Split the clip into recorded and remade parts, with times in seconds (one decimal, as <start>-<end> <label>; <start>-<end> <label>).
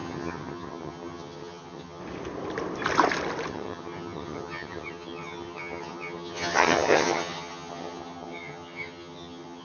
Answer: 0.0-2.0 remade; 2.0-3.5 recorded; 3.5-9.6 remade